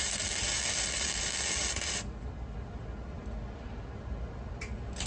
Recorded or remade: recorded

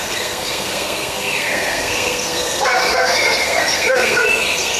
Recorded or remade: remade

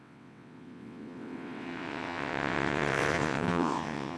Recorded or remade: remade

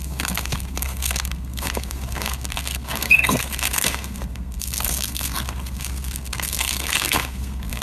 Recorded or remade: remade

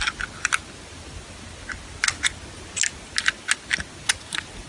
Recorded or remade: recorded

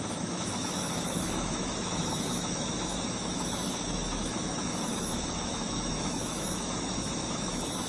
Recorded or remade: remade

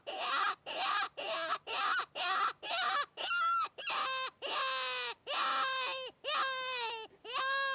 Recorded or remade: recorded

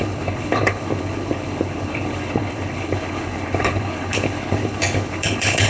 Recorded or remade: remade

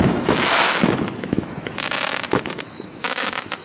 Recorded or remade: remade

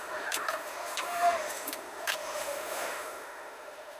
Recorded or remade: remade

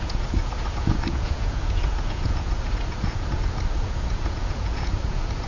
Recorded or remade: remade